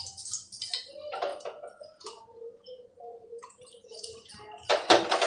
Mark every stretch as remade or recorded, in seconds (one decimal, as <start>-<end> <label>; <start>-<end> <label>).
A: 0.0-1.3 recorded; 1.3-4.3 remade; 4.3-5.3 recorded